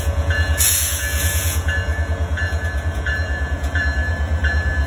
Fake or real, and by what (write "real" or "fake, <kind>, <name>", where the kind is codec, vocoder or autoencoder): fake, vocoder, Vocos